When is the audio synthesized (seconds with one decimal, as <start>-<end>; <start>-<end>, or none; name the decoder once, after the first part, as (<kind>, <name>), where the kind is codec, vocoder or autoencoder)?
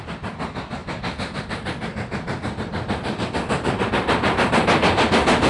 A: none